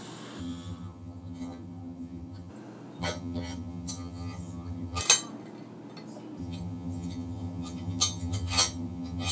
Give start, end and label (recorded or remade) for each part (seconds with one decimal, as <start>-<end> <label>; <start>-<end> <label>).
0.0-0.4 recorded; 0.4-2.5 remade; 2.5-3.0 recorded; 3.0-5.0 remade; 5.0-6.4 recorded; 6.4-9.3 remade